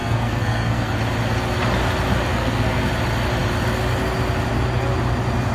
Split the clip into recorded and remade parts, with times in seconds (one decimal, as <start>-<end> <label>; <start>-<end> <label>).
0.0-0.9 remade; 0.9-2.3 recorded; 2.3-2.9 remade; 2.9-5.5 recorded

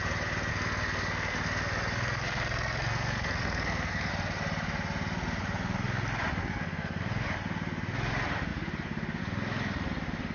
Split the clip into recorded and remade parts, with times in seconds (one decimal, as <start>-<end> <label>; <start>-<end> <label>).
0.0-0.5 recorded; 0.5-4.1 remade; 4.1-6.4 recorded; 6.4-7.0 remade; 7.0-10.3 recorded